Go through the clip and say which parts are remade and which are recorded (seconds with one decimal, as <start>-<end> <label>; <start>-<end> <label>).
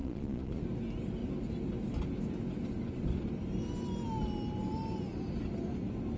0.0-0.6 remade; 0.6-6.2 recorded